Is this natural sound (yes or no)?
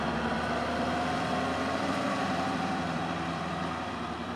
no